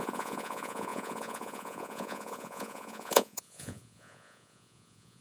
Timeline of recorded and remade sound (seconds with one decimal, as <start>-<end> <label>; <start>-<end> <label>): 0.0-5.2 remade